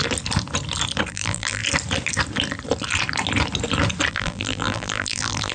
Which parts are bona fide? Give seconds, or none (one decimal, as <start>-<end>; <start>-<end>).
0.0-1.1; 1.6-4.1